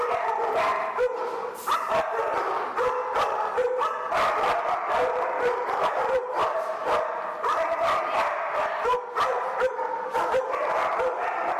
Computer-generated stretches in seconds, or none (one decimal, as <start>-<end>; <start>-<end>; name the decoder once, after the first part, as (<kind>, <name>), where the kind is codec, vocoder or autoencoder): 0.0-6.8 (vocoder, BigVGAN v2); 7.7-11.6